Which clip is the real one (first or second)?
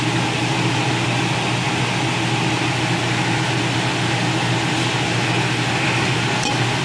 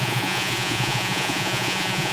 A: first